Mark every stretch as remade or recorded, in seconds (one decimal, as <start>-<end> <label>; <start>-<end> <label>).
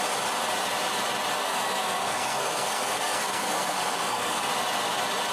0.0-1.4 recorded; 1.4-4.5 remade; 4.5-5.3 recorded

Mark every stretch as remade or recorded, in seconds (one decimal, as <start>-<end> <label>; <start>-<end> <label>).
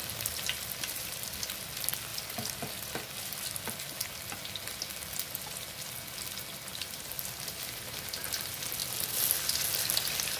0.0-10.4 recorded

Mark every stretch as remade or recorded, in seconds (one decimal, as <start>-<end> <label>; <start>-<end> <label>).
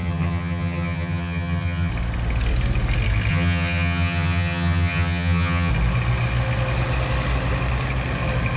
0.0-1.9 remade; 1.9-3.3 recorded; 3.3-5.7 remade; 5.7-8.6 recorded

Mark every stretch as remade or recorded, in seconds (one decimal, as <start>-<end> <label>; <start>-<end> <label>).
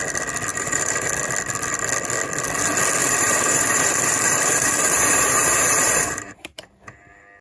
0.0-0.5 recorded; 0.5-1.1 remade; 1.1-3.0 recorded; 3.0-6.8 remade; 6.8-7.4 recorded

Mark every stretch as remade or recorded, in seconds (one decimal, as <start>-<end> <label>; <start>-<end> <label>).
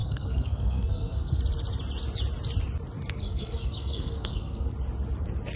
0.0-1.4 remade; 1.4-3.2 recorded; 3.2-4.7 remade; 4.7-5.6 recorded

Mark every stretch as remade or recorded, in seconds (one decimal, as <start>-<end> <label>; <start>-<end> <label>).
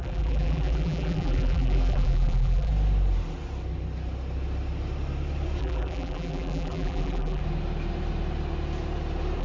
0.0-2.7 remade; 2.7-5.6 recorded; 5.6-7.4 remade; 7.4-9.4 recorded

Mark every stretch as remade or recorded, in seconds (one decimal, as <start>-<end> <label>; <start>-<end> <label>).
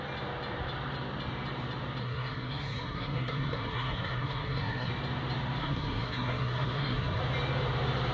0.0-2.0 recorded; 2.0-4.9 remade; 4.9-5.6 recorded; 5.6-7.2 remade; 7.2-8.1 recorded